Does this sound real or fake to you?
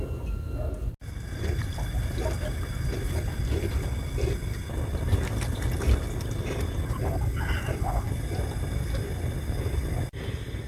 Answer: real